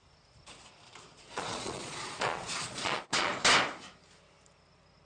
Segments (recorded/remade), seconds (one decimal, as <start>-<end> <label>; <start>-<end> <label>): 0.0-1.1 recorded; 1.1-3.3 remade; 3.3-5.1 recorded